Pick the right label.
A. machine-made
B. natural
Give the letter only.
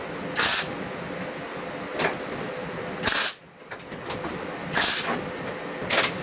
B